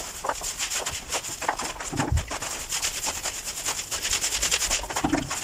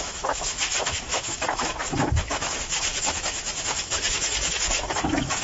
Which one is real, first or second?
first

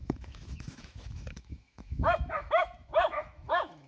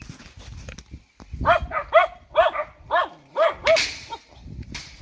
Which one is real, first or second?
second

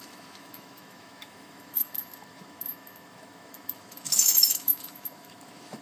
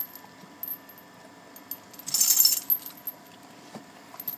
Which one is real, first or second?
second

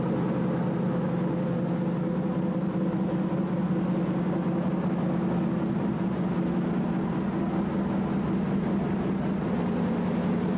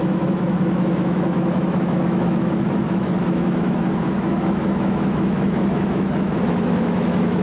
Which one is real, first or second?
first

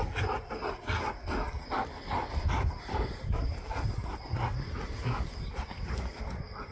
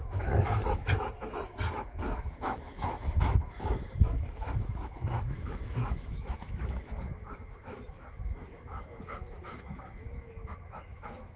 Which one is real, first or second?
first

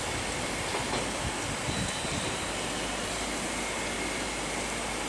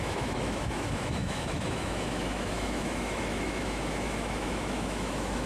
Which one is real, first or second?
first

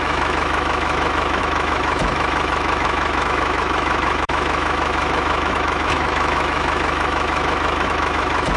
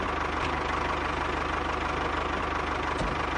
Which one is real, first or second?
second